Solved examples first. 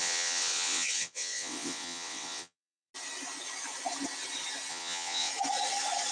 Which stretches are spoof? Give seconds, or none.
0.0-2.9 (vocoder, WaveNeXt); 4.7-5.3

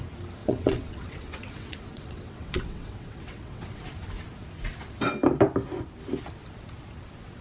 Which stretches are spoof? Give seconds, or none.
0.4-3.8 (vocoder, WaveNeXt)

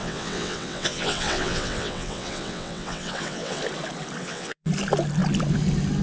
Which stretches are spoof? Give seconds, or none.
0.0-3.6 (vocoder, WaveNeXt); 4.2-4.7